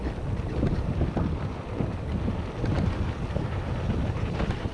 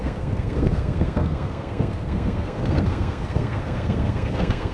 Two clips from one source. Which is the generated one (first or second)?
second